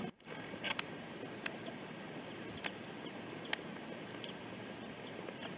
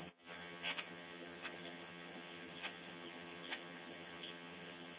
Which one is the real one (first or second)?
first